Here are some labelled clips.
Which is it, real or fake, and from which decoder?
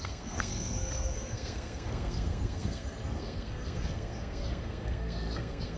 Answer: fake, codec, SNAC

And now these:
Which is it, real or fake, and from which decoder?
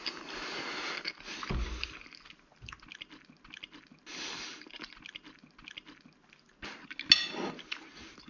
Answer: real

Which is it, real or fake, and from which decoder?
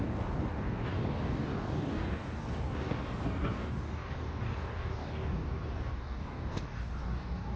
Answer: fake, codec, DAC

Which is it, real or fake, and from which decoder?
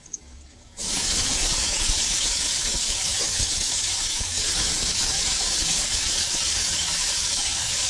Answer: fake, codec, DAC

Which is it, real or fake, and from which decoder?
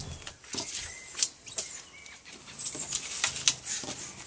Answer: real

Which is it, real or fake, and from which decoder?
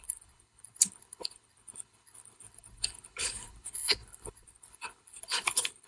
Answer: fake, codec, HILCodec